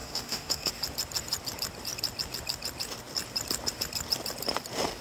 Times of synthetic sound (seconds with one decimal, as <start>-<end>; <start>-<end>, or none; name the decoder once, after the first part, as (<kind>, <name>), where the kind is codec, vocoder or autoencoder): 0.0-0.7 (autoencoder, DAC-VAE)